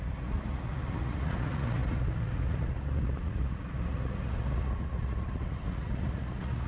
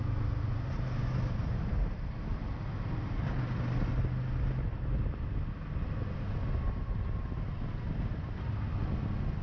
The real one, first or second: second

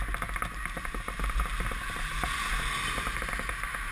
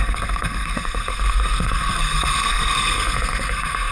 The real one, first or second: first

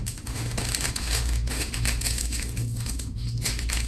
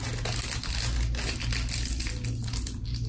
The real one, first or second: second